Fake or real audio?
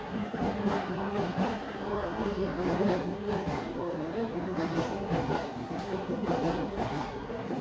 fake